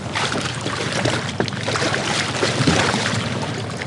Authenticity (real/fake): fake